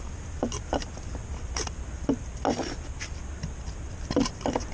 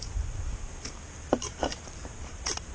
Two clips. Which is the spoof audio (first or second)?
second